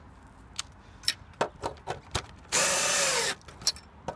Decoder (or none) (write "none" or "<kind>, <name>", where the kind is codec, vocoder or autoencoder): none